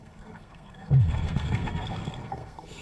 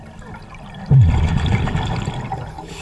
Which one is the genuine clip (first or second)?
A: second